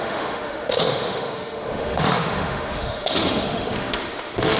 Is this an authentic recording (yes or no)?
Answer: no